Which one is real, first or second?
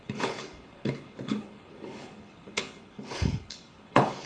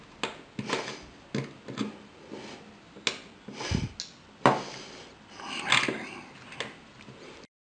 second